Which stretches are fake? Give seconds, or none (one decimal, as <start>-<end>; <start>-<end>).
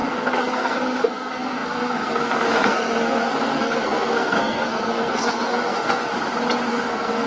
0.0-6.1; 6.7-7.3